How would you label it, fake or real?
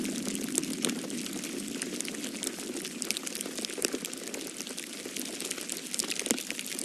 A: real